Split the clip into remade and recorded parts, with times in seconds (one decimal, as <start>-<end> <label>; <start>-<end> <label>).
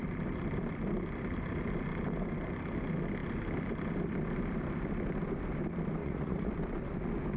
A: 0.0-6.0 recorded; 6.0-6.5 remade; 6.5-7.4 recorded